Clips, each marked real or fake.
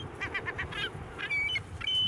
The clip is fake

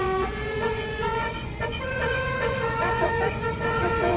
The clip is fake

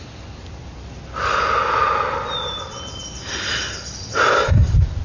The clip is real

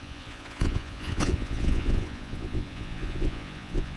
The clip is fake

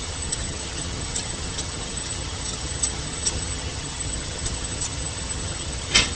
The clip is fake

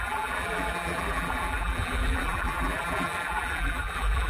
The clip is fake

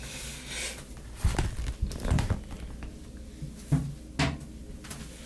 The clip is real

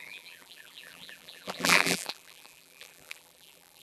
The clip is fake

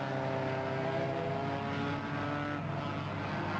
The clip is real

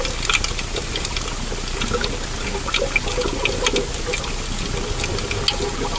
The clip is real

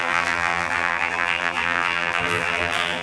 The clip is fake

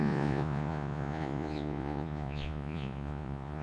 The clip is fake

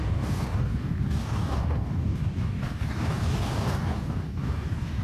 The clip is fake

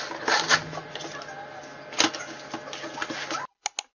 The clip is real